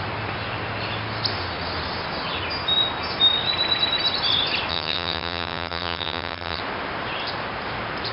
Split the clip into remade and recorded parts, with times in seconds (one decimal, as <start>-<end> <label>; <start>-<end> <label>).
0.0-4.7 recorded; 4.7-6.6 remade; 6.6-8.1 recorded

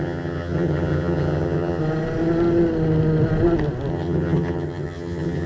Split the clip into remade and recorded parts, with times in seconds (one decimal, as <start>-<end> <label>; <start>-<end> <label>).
0.0-1.8 remade; 1.8-3.9 recorded; 3.9-5.5 remade

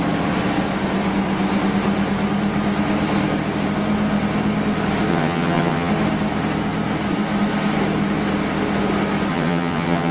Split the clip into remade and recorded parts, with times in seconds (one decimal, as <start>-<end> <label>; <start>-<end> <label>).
0.0-5.1 recorded; 5.1-5.9 remade; 5.9-9.3 recorded; 9.3-10.1 remade

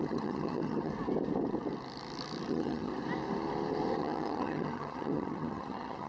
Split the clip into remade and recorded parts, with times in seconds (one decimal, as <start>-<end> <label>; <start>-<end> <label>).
0.0-0.9 remade; 0.9-2.5 recorded; 2.5-2.9 remade; 2.9-4.0 recorded; 4.0-6.1 remade